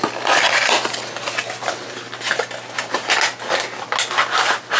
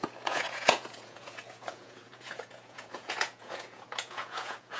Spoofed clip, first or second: second